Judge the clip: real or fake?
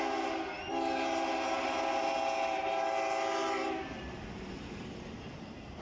real